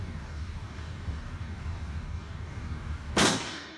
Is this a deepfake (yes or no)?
yes